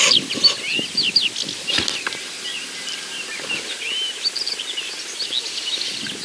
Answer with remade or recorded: recorded